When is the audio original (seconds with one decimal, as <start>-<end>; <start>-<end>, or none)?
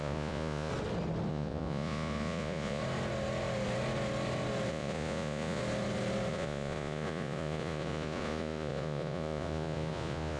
0.7-1.3; 2.8-4.7; 5.6-6.3